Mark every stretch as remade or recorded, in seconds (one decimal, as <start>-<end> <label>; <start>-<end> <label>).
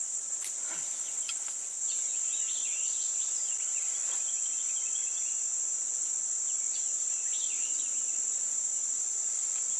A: 0.0-9.8 recorded